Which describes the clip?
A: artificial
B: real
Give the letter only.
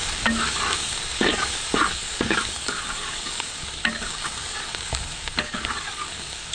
A